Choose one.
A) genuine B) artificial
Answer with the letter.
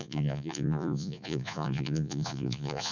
B